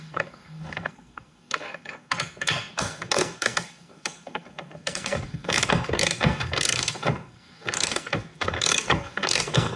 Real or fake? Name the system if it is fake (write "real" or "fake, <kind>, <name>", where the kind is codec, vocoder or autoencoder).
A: fake, codec, SNAC